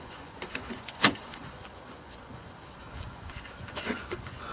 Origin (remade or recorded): remade